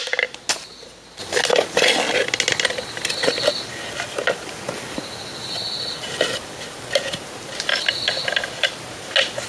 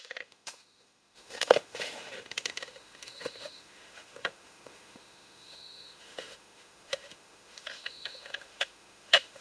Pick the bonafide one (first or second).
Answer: first